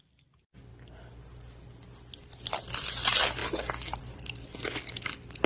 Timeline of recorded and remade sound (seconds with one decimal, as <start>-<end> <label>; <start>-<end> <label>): 0.0-5.5 recorded